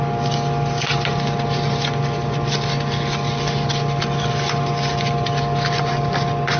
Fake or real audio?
real